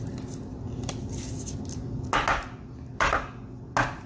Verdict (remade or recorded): recorded